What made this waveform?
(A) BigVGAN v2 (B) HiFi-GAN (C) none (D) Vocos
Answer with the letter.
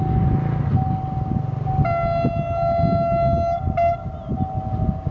C